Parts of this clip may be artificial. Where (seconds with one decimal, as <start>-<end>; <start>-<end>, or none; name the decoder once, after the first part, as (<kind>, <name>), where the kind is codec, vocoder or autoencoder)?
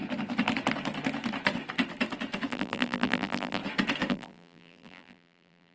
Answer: 2.5-3.6 (vocoder, BigVGAN v2); 4.1-5.7